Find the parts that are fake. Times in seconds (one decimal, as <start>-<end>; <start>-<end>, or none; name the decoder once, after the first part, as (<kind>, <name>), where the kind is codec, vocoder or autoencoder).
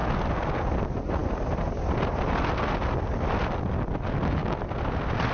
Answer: none